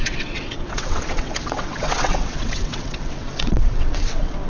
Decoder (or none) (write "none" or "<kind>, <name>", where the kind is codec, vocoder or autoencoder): vocoder, WaveNeXt